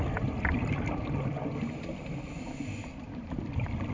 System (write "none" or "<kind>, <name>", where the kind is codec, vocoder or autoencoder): none